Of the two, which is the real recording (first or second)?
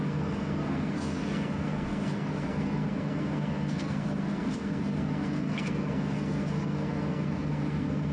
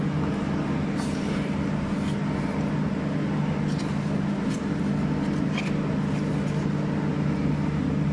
second